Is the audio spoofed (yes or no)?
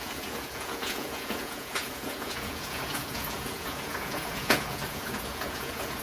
yes